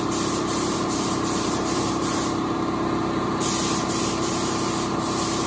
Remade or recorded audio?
recorded